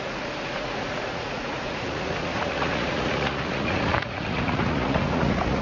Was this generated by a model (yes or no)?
yes